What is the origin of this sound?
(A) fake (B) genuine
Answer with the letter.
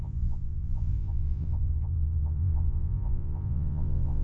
A